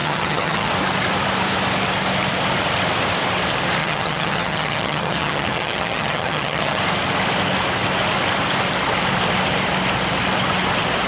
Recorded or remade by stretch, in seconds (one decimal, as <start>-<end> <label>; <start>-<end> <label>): 0.0-0.7 remade; 0.7-3.8 recorded; 3.8-6.8 remade; 6.8-11.1 recorded